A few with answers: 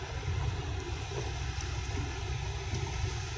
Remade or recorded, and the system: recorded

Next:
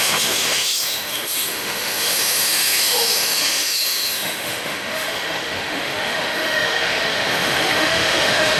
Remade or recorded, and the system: remade, autoencoder, DAC-VAE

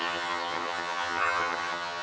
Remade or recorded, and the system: remade, vocoder, HiFi-GAN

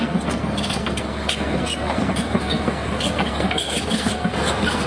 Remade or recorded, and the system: remade, codec, SNAC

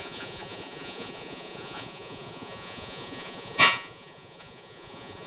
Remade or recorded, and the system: remade, vocoder, Vocos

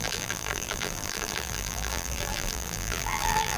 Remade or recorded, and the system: remade, vocoder, BigVGAN v2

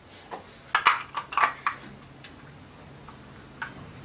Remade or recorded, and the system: recorded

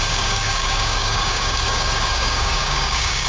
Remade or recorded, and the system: remade, codec, DAC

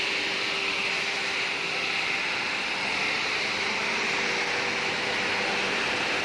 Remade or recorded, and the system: remade, vocoder, BigVGAN v2